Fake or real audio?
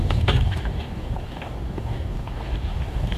fake